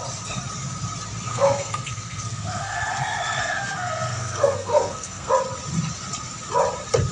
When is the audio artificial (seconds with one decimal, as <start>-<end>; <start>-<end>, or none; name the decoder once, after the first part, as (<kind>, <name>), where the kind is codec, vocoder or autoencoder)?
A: 1.3-5.3 (codec, SNAC)